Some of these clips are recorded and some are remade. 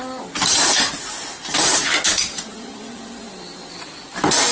recorded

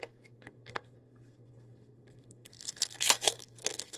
remade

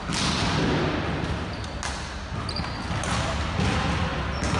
recorded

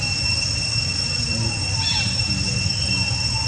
recorded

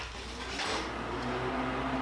recorded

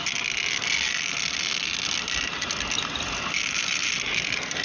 recorded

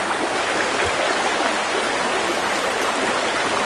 recorded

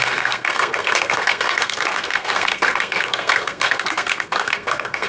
remade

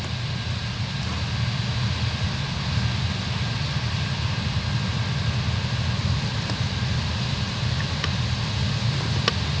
recorded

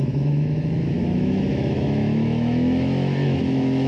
remade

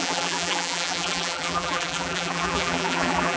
remade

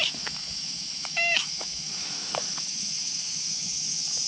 remade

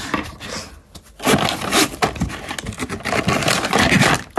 recorded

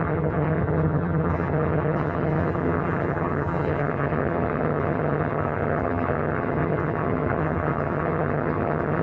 remade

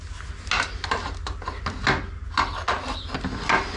recorded